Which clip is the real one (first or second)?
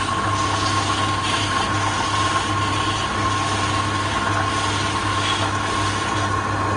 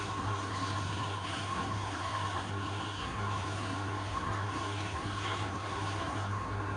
first